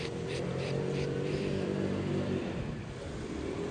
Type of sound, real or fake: fake